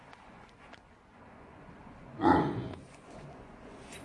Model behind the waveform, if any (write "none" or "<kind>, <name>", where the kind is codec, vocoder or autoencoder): vocoder, Vocos